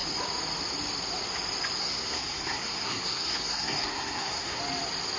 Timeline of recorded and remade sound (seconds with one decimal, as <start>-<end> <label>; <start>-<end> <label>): 0.0-1.8 recorded; 1.8-4.6 remade; 4.6-5.2 recorded